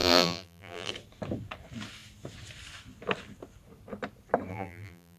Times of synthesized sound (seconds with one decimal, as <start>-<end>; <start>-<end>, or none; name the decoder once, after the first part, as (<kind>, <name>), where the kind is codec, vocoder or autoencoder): 0.0-0.9 (vocoder, BigVGAN v2); 4.5-5.2